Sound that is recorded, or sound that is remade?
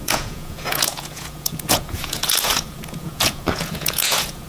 remade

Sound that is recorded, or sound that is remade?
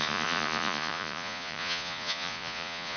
remade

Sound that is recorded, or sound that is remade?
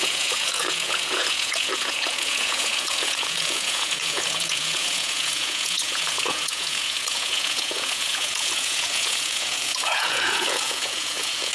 remade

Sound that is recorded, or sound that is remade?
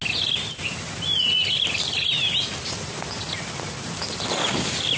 recorded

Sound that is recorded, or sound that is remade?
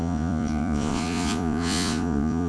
remade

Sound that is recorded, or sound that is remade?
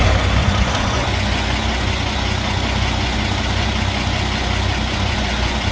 remade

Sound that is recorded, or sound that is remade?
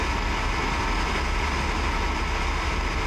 recorded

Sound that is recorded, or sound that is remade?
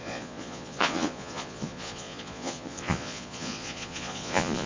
remade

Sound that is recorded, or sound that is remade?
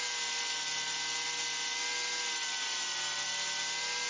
recorded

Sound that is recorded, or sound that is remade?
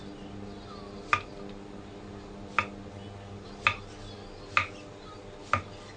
recorded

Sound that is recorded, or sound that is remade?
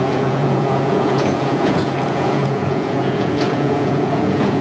remade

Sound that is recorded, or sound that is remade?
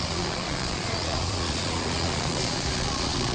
remade